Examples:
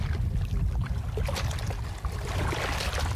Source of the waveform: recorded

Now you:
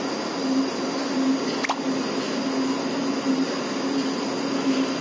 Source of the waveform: recorded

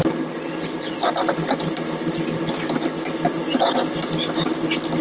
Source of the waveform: recorded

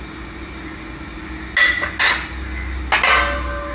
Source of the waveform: recorded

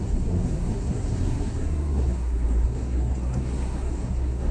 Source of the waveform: remade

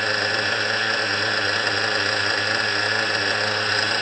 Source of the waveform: recorded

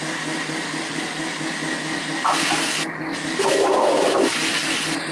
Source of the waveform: recorded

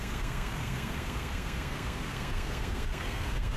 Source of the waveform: remade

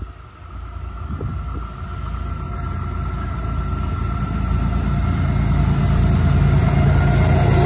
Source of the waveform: recorded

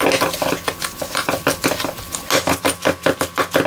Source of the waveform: recorded